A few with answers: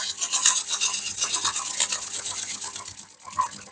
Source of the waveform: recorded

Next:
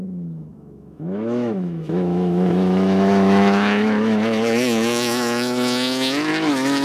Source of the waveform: remade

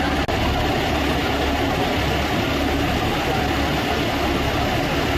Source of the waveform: recorded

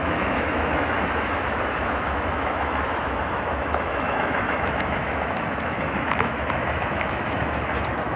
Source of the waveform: remade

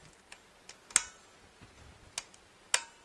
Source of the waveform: recorded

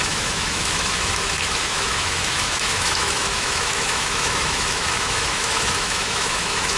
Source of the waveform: remade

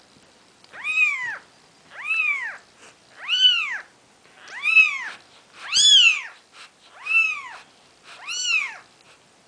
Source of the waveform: recorded